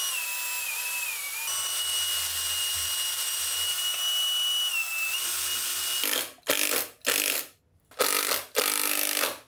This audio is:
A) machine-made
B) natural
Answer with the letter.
B